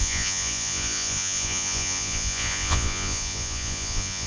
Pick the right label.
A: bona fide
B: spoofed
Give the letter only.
B